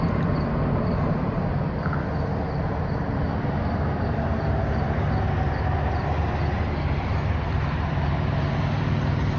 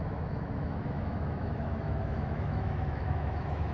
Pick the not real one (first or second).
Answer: second